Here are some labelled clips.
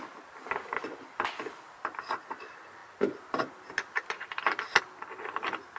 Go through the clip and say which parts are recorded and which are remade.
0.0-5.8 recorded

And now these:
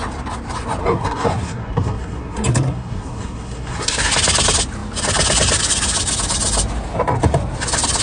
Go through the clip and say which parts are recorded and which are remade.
0.0-0.8 recorded; 0.8-4.1 remade; 4.1-8.0 recorded

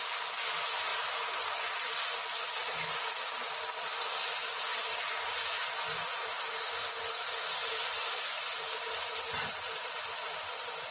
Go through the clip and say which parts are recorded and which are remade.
0.0-0.9 recorded; 0.9-1.7 remade; 1.7-4.7 recorded; 4.7-9.7 remade; 9.7-10.9 recorded

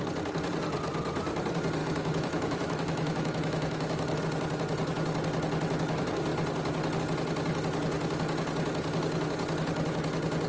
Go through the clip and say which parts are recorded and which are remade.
0.0-1.8 recorded; 1.8-4.2 remade; 4.2-10.5 recorded